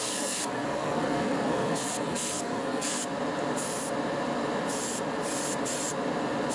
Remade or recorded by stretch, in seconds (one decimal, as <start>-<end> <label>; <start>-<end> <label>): 0.0-3.0 remade; 3.0-6.5 recorded